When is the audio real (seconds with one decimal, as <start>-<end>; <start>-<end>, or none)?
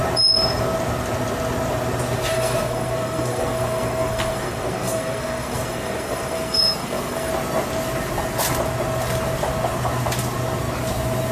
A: 0.0-2.3; 7.3-11.3